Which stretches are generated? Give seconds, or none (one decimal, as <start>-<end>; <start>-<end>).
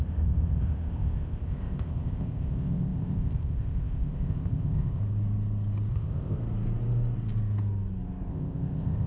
0.0-5.0; 5.9-6.4; 8.3-9.1